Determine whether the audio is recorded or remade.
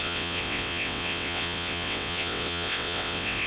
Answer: remade